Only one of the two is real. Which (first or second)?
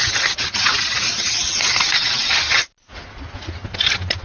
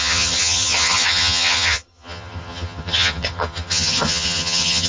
first